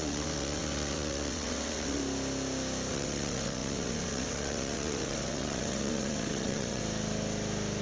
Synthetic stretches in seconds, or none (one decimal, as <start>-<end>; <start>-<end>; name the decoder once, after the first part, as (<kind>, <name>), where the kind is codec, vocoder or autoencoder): 0.0-2.0 (vocoder, WaveNeXt); 2.9-6.8

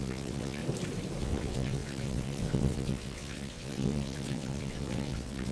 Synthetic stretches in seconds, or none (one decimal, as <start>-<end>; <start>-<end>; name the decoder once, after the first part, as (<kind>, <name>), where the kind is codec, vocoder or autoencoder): 0.0-0.6 (vocoder, WaveNeXt); 1.2-5.5

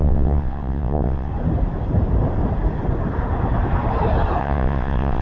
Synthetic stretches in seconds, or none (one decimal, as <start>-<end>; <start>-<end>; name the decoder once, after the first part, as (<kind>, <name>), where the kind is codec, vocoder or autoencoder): 0.0-1.3 (vocoder, WaveNeXt); 4.4-5.2

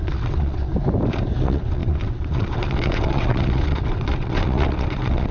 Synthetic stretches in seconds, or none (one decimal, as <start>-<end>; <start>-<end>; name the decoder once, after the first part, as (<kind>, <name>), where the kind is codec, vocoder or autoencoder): 0.0-0.7 (vocoder, WaveNeXt); 1.4-5.3

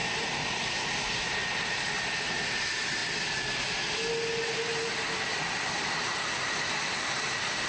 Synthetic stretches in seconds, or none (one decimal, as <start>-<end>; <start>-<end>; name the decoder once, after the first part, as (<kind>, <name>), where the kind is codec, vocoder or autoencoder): none